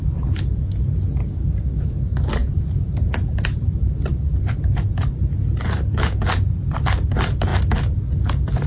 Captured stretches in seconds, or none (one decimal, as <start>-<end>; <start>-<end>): 0.0-2.4; 6.0-8.7